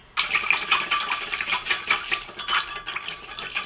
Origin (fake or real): real